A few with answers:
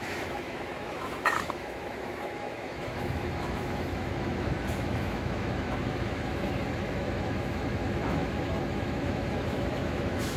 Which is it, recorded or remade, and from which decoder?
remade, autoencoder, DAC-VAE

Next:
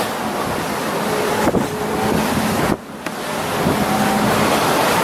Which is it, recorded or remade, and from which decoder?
recorded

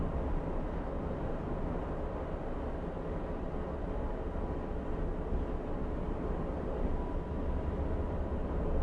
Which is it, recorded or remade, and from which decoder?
recorded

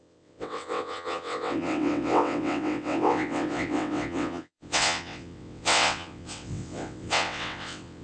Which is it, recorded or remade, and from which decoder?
remade, vocoder, WaveNeXt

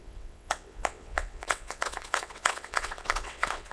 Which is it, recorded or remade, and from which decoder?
remade, vocoder, WaveNeXt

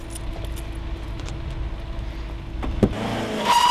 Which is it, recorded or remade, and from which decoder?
recorded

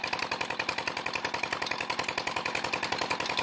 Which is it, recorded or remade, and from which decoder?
recorded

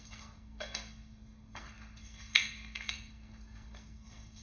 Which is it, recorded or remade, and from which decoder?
remade, codec, SNAC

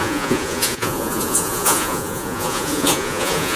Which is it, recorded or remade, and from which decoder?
remade, vocoder, Vocos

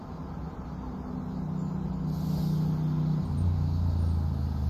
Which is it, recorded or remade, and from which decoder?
recorded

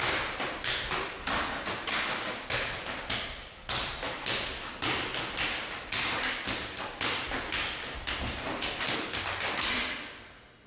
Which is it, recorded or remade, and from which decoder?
recorded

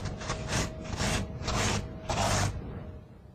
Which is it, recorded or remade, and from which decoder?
recorded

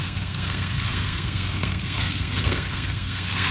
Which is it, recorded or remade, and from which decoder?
remade, codec, SNAC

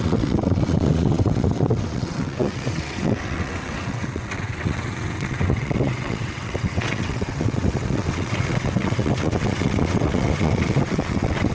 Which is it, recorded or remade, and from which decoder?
remade, vocoder, WaveNeXt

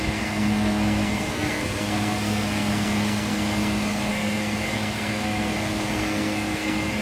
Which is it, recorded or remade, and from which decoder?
remade, codec, SNAC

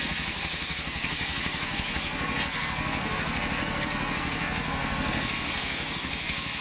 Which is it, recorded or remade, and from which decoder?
remade, codec, SNAC